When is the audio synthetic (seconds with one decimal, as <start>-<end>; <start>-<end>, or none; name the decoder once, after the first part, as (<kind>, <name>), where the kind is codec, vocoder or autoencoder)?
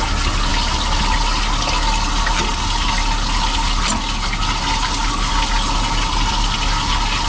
none